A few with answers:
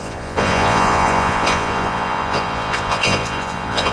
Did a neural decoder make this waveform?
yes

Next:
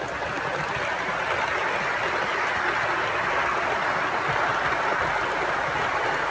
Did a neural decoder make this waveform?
no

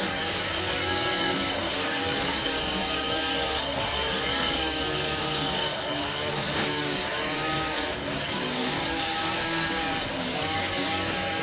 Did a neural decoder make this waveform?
yes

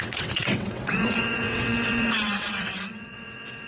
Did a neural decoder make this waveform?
yes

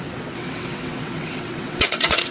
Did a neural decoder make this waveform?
yes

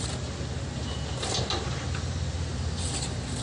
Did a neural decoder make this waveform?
no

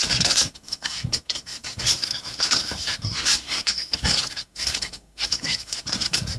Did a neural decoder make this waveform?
yes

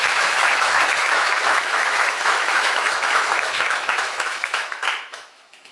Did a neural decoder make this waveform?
yes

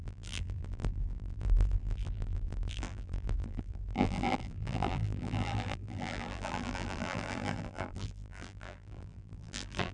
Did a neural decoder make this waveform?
yes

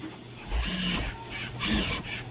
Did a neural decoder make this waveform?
no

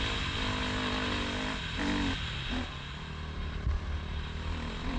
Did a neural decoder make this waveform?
no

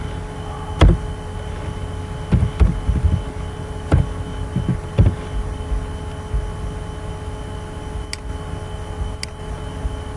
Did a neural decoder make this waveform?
no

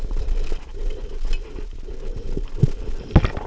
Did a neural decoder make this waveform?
no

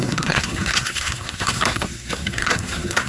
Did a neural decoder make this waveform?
yes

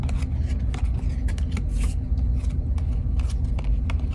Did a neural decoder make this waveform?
no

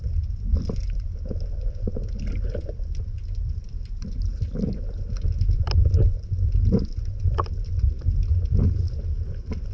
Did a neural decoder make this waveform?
no